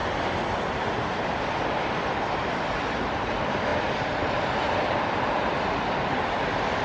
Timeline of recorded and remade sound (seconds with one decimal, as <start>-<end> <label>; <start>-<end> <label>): 0.0-3.7 recorded; 3.7-5.4 remade; 5.4-6.8 recorded

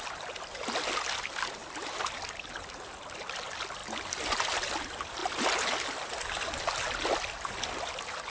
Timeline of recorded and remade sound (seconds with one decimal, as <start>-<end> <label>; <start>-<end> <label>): 0.0-1.6 recorded; 1.6-2.2 remade; 2.2-3.8 recorded; 3.8-4.8 remade; 4.8-8.3 recorded

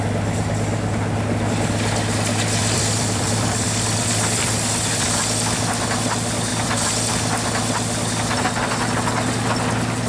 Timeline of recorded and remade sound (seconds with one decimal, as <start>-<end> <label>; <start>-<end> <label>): 0.0-2.6 recorded; 2.6-5.7 remade; 5.7-6.5 recorded; 6.5-7.1 remade; 7.1-10.1 recorded

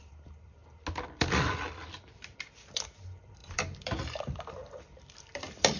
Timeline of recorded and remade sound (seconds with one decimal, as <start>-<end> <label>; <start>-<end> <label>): 0.0-0.6 remade; 0.6-1.1 recorded; 1.1-5.8 remade

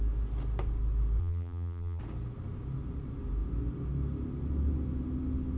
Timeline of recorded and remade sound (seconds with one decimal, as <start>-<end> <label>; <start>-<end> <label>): 0.0-1.2 recorded; 1.2-2.0 remade; 2.0-5.6 recorded

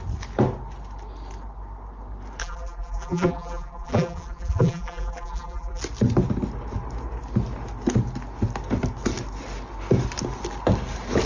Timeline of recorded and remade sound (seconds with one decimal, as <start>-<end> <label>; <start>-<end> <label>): 0.0-2.4 recorded; 2.4-5.8 remade; 5.8-11.3 recorded

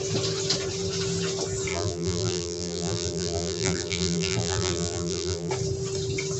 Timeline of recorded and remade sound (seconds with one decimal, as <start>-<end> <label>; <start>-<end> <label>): 0.0-1.7 recorded; 1.7-5.5 remade; 5.5-6.4 recorded